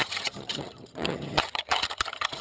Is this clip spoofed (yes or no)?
yes